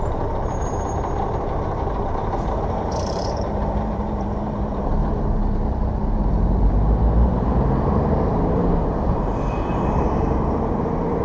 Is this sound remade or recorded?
remade